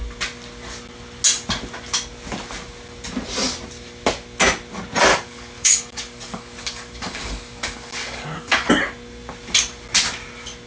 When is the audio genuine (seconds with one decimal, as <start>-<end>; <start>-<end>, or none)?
0.0-5.1; 8.7-10.7

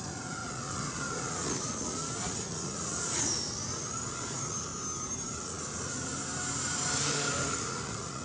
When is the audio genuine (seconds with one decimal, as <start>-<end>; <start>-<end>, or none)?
4.7-5.3; 6.1-7.5